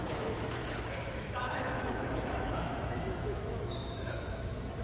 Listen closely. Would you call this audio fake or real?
fake